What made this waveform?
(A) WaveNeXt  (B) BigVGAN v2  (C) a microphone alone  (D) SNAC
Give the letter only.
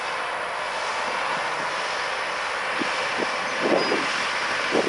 C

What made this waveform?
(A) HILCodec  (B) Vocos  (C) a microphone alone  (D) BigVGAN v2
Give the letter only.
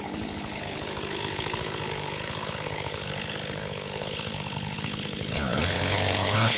A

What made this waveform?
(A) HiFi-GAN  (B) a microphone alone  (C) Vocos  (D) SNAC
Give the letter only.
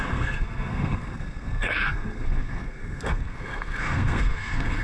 D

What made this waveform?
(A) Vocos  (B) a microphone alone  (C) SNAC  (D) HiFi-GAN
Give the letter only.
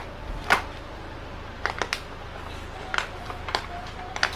B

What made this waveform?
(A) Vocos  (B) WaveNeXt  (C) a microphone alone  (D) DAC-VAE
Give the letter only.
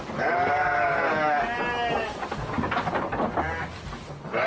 C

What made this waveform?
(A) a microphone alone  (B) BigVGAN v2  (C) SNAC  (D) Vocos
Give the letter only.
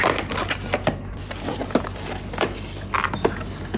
A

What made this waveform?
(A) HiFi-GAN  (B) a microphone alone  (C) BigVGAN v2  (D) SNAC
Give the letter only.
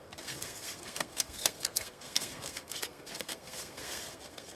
D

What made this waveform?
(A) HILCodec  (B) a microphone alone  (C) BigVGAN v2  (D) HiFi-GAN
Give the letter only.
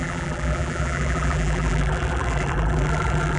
C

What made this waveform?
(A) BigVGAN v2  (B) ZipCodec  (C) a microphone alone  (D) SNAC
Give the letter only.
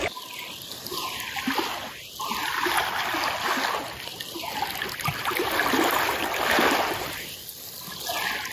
C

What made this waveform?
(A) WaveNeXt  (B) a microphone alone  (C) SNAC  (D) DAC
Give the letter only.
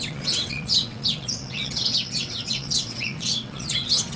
A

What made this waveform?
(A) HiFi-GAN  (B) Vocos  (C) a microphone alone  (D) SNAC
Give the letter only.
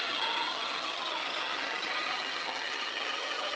A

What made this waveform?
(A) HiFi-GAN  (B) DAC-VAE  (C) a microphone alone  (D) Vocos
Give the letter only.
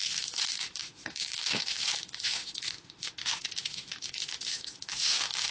B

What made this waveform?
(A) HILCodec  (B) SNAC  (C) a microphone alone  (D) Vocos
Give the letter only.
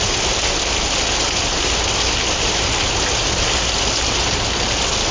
C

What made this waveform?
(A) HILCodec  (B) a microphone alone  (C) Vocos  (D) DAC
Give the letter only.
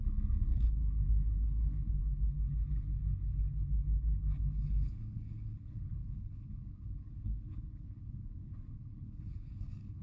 A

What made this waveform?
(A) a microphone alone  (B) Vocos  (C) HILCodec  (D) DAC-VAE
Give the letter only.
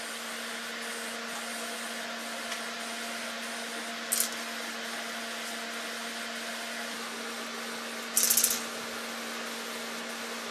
A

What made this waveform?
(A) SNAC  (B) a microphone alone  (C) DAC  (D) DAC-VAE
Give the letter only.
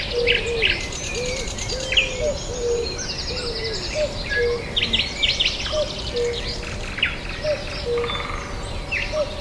B